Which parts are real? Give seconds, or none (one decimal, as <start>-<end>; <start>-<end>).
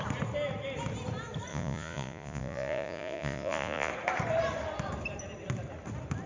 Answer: 0.0-1.5; 3.9-6.3